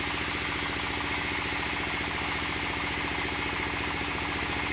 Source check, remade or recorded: recorded